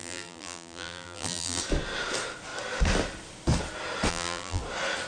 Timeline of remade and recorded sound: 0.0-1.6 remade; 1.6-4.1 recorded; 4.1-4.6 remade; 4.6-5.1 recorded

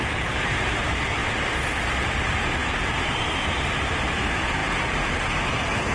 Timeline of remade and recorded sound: 0.0-5.9 remade

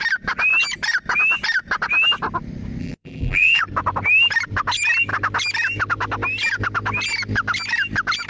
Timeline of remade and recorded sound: 0.0-2.8 recorded; 2.8-3.6 remade; 3.6-8.3 recorded

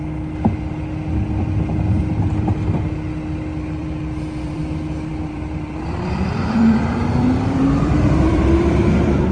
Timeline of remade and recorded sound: 0.0-3.8 recorded; 3.8-4.6 remade; 4.6-5.1 recorded; 5.1-9.3 remade

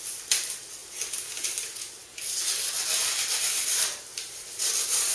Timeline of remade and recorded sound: 0.0-5.1 recorded

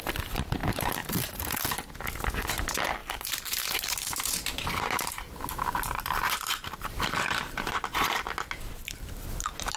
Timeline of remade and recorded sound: 0.0-0.6 recorded; 0.6-1.6 remade; 1.6-3.0 recorded; 3.0-8.2 remade; 8.2-9.8 recorded